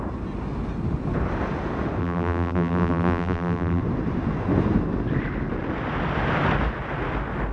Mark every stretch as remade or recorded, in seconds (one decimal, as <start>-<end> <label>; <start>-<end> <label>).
0.0-2.0 recorded; 2.0-3.8 remade; 3.8-7.5 recorded